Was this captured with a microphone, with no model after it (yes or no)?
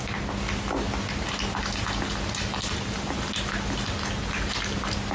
yes